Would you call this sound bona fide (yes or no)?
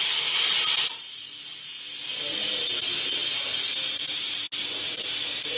yes